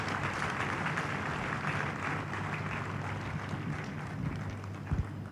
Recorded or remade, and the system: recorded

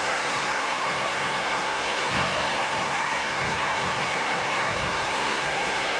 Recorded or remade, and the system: remade, codec, SNAC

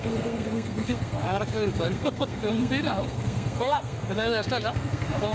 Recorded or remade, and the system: remade, codec, SNAC